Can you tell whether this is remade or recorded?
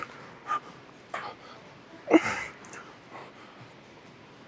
recorded